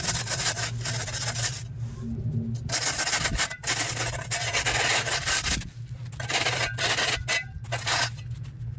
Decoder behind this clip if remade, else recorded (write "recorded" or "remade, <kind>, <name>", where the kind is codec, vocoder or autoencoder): recorded